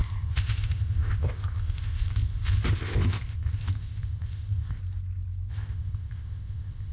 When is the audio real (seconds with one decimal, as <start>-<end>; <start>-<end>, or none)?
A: 4.8-5.5